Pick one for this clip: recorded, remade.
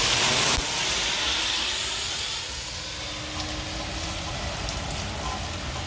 recorded